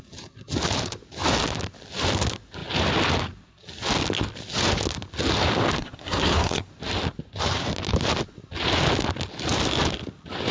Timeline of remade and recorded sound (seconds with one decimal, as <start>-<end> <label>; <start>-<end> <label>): 0.0-5.8 recorded; 5.8-6.7 remade; 6.7-10.5 recorded